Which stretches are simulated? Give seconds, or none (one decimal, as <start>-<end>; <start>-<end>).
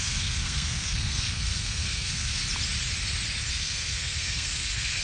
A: 0.0-2.4; 3.5-5.0